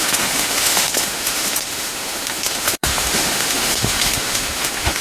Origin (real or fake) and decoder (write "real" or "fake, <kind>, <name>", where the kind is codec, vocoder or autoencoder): fake, autoencoder, DAC-VAE